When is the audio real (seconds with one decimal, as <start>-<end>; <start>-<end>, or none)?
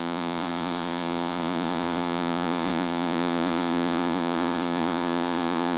none